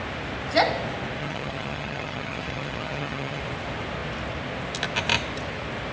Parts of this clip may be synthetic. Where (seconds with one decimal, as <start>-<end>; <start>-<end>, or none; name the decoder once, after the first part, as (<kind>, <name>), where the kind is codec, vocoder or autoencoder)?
1.2-3.4 (vocoder, HiFi-GAN)